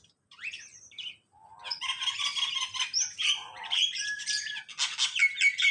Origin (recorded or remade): recorded